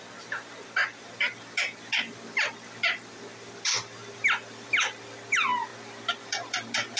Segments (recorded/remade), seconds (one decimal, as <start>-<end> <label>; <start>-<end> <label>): 0.0-7.0 recorded